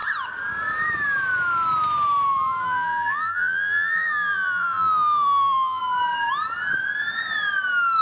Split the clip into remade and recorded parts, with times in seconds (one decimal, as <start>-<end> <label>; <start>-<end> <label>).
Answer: 0.0-2.6 recorded; 2.6-5.8 remade; 5.8-8.0 recorded